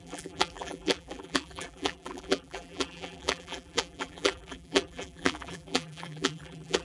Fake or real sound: fake